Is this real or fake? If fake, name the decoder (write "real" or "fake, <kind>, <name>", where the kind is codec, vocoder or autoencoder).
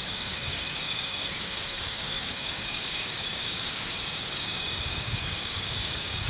fake, codec, DAC